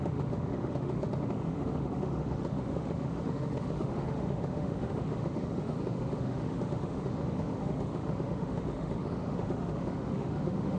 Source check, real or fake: fake